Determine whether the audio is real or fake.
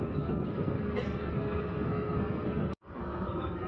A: fake